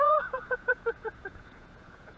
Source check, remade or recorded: remade